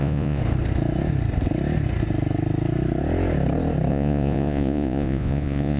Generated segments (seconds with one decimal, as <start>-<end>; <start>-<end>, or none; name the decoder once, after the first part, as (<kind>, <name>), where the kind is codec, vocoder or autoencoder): 0.0-0.4 (vocoder, Vocos); 3.9-5.8